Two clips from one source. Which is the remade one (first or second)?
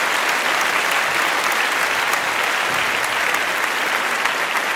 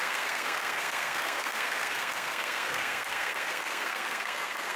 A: second